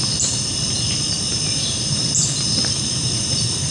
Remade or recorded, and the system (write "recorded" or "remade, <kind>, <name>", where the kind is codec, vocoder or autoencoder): remade, vocoder, BigVGAN v2